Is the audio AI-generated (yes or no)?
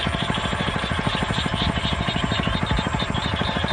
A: no